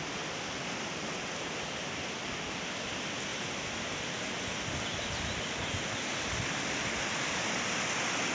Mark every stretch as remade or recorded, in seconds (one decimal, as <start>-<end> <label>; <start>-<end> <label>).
0.0-3.3 recorded; 3.3-4.3 remade; 4.3-8.3 recorded